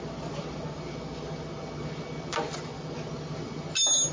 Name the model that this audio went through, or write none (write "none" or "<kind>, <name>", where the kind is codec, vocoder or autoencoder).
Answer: none